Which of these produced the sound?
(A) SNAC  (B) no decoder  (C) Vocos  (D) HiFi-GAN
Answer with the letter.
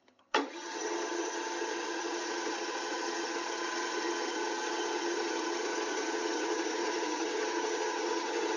D